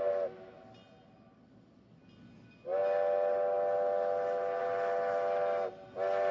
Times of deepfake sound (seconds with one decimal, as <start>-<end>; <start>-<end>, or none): none